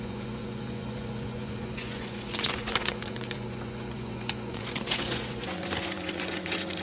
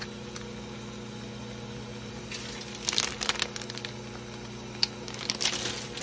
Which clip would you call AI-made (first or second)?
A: first